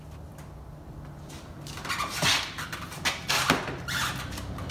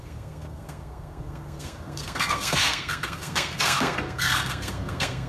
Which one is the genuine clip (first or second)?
first